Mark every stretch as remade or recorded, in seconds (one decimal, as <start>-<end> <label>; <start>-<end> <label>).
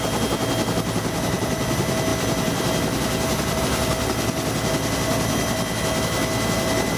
0.0-2.1 recorded; 2.1-3.6 remade; 3.6-7.0 recorded